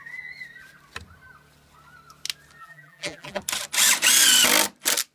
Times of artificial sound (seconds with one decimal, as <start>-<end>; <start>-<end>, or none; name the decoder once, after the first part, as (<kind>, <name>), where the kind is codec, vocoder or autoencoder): 2.6-3.4 (vocoder, BigVGAN v2)